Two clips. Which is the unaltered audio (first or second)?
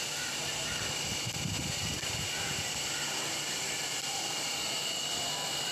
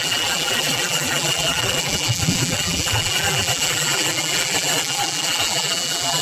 first